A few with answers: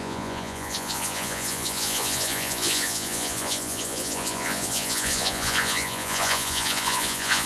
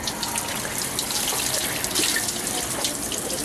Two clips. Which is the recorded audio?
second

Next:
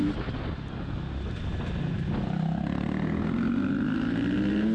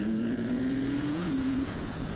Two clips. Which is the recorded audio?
first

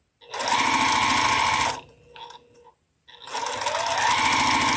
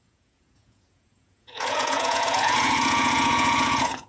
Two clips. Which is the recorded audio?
first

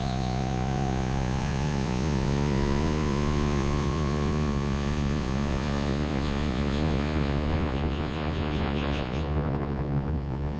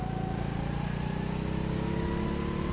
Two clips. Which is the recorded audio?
second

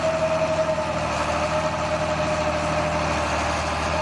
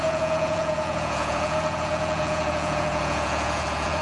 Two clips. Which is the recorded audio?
first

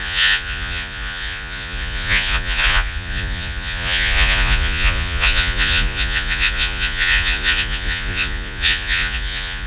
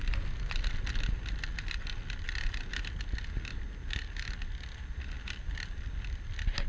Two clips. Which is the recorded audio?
second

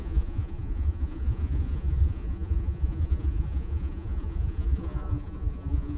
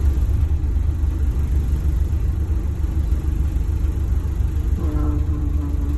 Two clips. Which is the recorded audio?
second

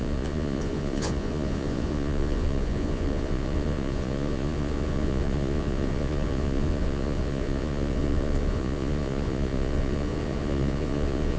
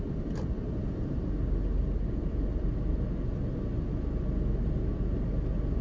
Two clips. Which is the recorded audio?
second